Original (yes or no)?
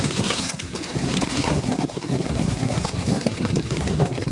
no